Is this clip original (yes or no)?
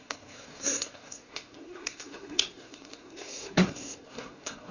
no